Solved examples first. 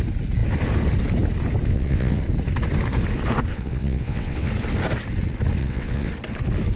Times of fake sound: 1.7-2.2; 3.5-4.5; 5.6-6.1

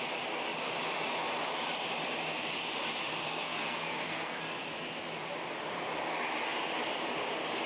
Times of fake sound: 3.2-4.4

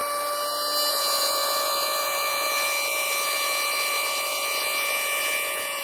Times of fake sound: 0.9-5.8

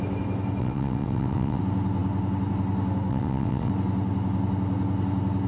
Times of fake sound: 0.6-1.6; 3.1-3.7

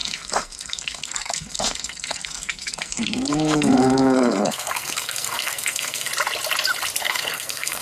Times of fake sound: 0.0-6.1; 7.0-7.8

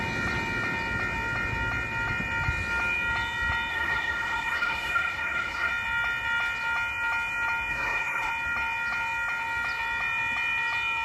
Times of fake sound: 3.7-5.7; 7.7-8.3

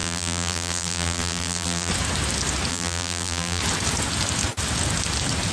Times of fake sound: 0.0-1.9; 2.7-3.6